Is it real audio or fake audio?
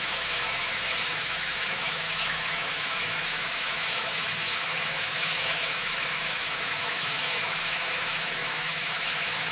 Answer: fake